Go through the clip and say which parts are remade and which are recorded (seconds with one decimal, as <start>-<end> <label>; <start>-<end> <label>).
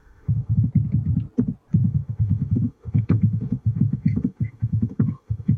0.0-0.7 remade; 0.7-1.8 recorded; 1.8-5.6 remade